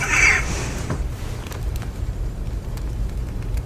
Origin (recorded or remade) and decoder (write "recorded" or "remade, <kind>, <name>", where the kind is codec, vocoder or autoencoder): remade, vocoder, BigVGAN v2